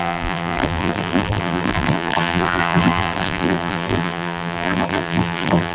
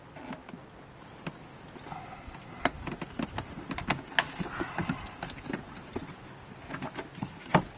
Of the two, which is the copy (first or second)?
first